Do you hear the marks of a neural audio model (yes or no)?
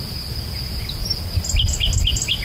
no